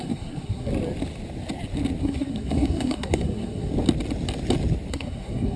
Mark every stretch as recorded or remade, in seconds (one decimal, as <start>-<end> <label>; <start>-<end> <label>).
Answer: 0.0-0.7 remade; 0.7-2.0 recorded; 2.0-3.7 remade; 3.7-4.9 recorded; 4.9-5.6 remade